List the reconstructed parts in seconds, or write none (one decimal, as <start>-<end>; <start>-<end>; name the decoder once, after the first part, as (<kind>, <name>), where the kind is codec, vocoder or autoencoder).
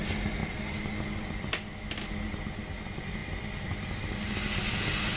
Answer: none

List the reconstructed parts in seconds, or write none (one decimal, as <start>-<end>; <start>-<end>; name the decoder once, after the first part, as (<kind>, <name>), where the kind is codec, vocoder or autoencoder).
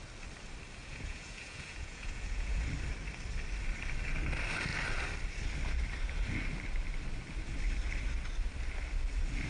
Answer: 0.8-2.6 (vocoder, Vocos)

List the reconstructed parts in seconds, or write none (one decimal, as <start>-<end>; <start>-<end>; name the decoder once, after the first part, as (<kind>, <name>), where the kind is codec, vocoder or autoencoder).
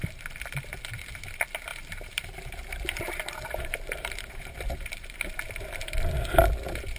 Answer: 1.7-5.3 (vocoder, BigVGAN v2)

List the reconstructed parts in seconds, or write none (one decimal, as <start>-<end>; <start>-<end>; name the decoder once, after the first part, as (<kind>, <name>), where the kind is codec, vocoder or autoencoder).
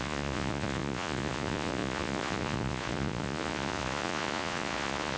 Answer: 0.0-5.2 (vocoder, Vocos)